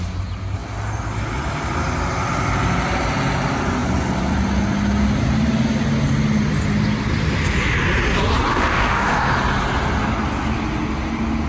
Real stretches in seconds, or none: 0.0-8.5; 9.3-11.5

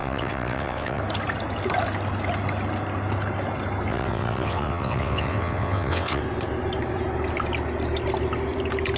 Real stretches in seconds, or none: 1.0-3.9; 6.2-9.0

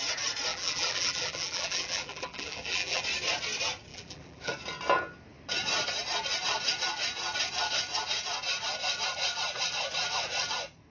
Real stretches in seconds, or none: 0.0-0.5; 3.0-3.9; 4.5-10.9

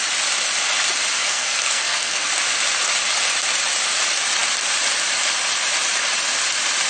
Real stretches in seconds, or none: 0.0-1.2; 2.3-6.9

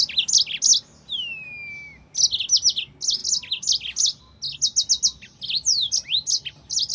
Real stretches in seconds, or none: 0.0-6.9